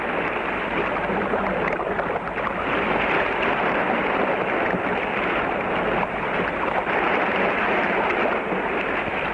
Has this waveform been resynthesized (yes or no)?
no